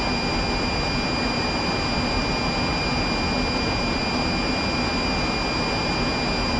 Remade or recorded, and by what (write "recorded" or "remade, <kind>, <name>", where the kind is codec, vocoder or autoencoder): recorded